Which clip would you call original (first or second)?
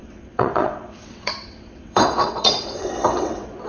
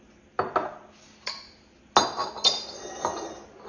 second